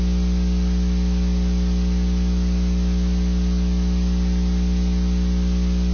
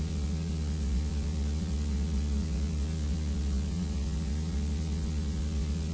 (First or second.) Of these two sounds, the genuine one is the first